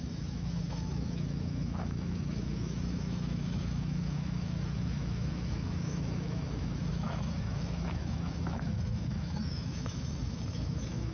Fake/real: fake